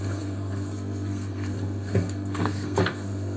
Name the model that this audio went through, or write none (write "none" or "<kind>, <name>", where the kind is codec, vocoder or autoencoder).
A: codec, SNAC